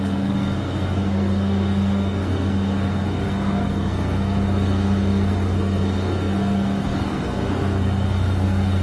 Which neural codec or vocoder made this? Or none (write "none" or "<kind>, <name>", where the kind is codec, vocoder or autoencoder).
codec, SNAC